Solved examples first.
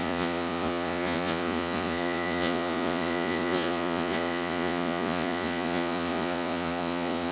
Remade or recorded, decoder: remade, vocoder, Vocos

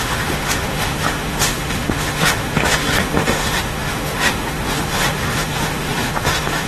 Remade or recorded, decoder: remade, autoencoder, DAC-VAE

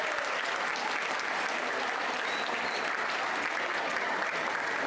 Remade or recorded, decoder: recorded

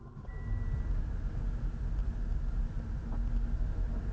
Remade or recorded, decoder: recorded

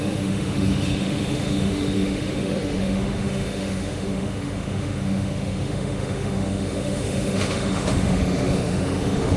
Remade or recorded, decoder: remade, autoencoder, DAC-VAE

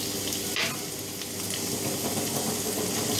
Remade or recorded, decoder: recorded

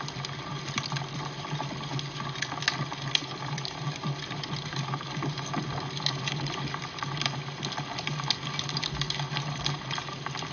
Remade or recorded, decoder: recorded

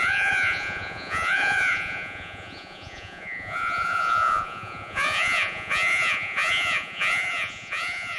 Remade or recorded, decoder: remade, vocoder, Vocos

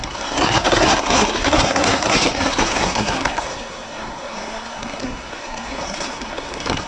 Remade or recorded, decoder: remade, codec, SNAC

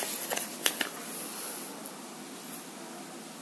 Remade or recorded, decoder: recorded